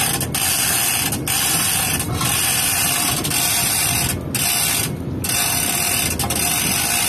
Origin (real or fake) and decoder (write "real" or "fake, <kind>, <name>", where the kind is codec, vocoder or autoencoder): real